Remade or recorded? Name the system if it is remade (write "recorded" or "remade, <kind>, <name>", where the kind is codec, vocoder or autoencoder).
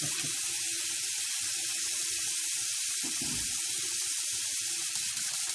recorded